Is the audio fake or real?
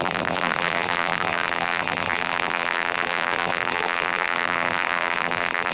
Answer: fake